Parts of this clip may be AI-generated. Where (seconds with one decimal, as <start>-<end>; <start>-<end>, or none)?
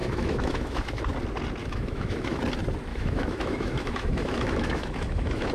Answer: 0.0-1.0; 1.6-2.4; 2.9-5.5